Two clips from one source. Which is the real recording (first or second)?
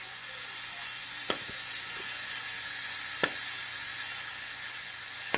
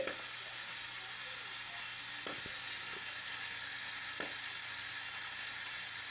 second